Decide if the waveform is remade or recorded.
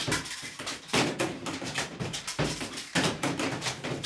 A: remade